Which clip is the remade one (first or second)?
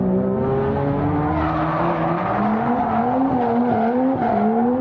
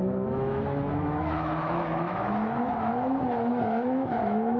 second